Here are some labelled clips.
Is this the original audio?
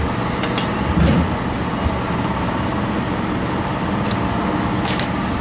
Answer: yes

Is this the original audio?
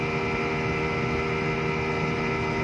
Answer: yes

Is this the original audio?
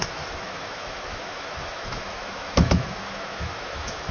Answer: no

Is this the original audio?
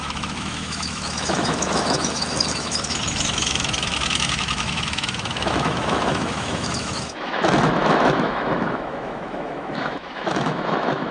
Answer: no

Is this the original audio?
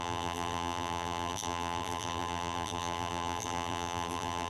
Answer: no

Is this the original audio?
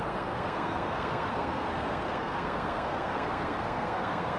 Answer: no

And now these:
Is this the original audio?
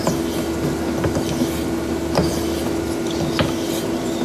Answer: yes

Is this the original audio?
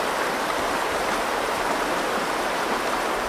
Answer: no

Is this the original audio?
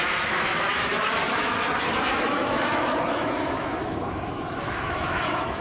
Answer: no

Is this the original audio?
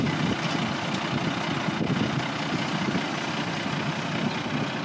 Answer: yes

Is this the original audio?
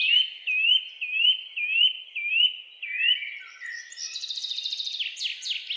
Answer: yes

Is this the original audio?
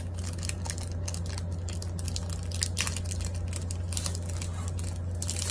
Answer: yes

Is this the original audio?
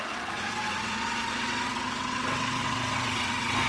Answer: no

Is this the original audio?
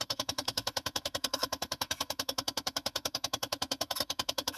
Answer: no